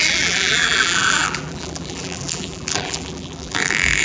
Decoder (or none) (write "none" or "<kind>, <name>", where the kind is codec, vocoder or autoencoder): vocoder, BigVGAN v2